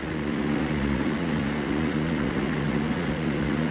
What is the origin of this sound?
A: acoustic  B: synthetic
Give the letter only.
B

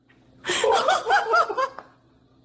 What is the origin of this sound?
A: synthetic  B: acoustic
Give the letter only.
B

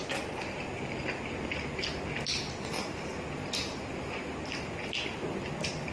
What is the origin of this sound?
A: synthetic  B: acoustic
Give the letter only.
B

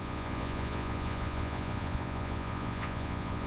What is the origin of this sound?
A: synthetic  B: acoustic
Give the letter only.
A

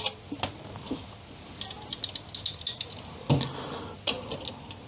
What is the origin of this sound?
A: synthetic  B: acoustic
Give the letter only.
B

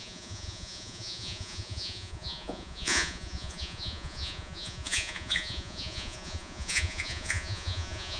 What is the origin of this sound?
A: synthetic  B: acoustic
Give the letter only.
A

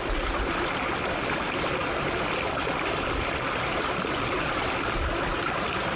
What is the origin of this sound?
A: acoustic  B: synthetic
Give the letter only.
A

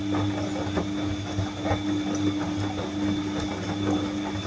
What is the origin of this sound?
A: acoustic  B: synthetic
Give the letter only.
A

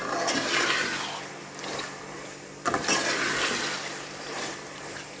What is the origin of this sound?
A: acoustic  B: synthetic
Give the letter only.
A